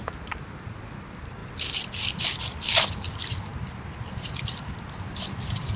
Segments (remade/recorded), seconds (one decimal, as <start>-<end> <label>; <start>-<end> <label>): 0.0-5.8 recorded